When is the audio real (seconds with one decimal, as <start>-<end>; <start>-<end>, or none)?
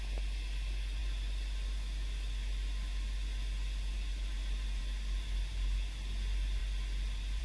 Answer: 0.0-7.4